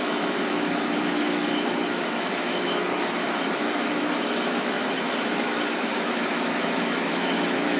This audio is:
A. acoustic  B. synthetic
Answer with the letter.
B